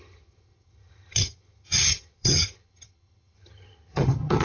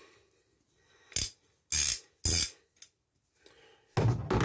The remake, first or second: first